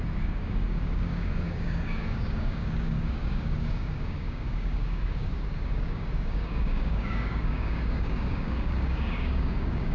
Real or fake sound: fake